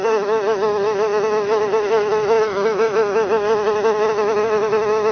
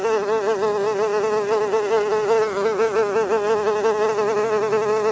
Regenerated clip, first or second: first